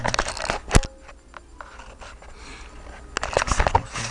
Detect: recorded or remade recorded